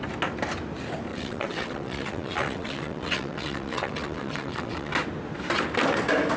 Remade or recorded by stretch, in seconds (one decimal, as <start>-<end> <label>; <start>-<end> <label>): 0.0-1.1 recorded; 1.1-4.9 remade; 4.9-6.4 recorded